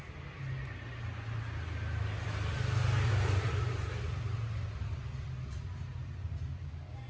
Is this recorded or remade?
recorded